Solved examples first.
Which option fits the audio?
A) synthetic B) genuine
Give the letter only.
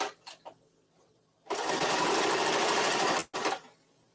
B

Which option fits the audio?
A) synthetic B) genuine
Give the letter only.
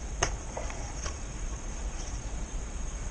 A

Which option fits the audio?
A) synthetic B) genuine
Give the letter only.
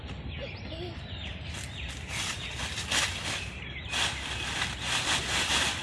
B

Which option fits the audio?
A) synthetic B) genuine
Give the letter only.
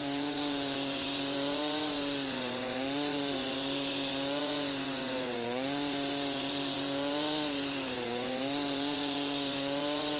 A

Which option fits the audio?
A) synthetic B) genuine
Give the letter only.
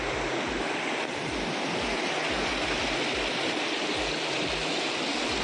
B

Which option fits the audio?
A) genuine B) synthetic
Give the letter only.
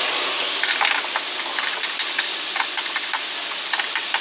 A